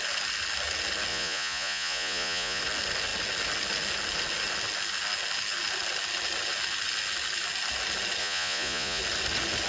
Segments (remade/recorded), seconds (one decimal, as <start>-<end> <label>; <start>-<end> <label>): 0.0-1.1 recorded; 1.1-2.6 remade; 2.6-8.2 recorded; 8.2-9.0 remade; 9.0-9.7 recorded